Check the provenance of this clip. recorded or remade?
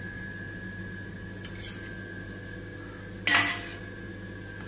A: recorded